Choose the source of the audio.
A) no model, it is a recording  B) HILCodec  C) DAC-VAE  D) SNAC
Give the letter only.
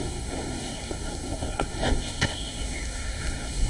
D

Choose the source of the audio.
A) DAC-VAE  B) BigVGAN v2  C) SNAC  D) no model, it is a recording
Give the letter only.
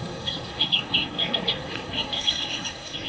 C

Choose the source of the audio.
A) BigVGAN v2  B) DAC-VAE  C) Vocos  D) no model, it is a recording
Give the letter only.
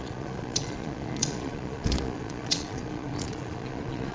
C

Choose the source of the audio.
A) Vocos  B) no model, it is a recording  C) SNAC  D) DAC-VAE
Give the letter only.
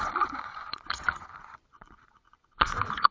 A